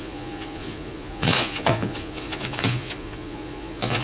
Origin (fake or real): fake